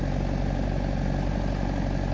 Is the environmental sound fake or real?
real